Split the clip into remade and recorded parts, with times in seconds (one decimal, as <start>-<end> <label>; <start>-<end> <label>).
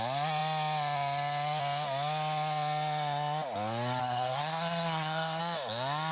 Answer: 0.0-4.0 recorded; 4.0-5.4 remade; 5.4-6.1 recorded